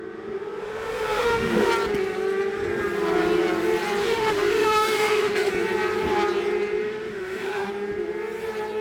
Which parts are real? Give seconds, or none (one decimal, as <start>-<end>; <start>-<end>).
0.0-0.6; 1.7-4.0; 5.5-6.8; 7.7-8.8